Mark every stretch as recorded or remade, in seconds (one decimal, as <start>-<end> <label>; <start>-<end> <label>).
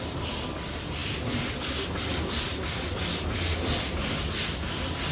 0.0-5.1 recorded